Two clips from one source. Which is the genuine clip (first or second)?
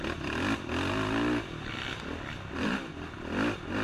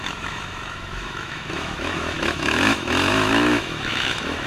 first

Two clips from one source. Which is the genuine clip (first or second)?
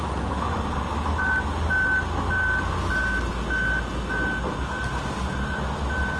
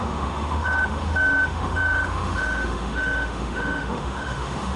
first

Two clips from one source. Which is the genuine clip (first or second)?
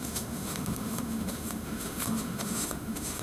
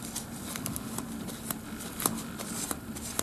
second